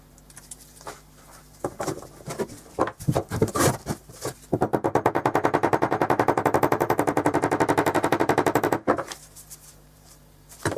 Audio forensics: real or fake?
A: fake